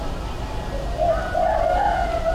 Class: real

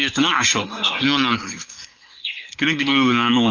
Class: fake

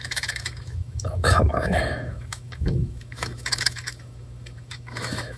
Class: fake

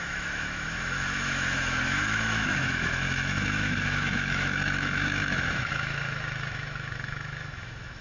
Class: fake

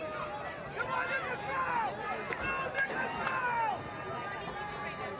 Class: real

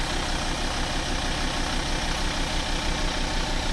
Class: real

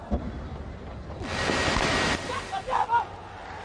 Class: real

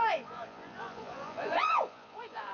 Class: fake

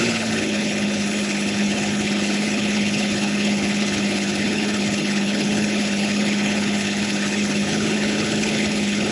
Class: fake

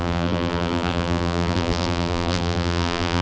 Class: fake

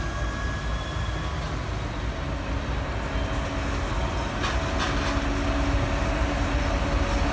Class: real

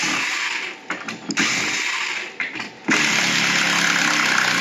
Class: real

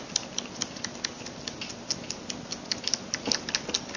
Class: real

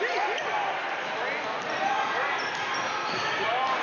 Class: real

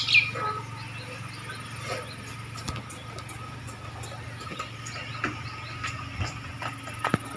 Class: real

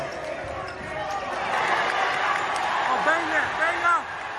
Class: real